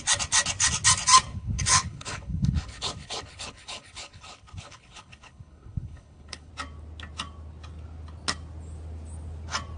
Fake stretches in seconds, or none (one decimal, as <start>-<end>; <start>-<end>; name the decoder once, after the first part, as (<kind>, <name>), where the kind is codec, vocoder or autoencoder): 1.3-6.5 (codec, HILCodec)